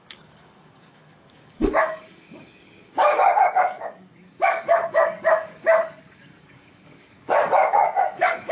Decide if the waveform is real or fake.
fake